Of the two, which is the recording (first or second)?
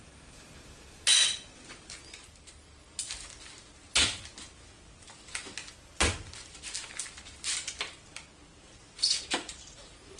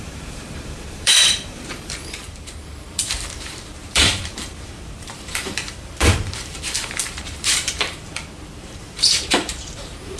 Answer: first